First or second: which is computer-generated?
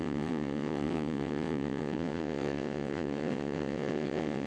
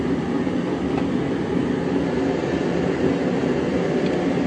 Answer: first